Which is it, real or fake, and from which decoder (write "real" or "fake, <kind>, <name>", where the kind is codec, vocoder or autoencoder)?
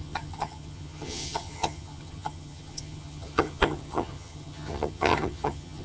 fake, vocoder, HiFi-GAN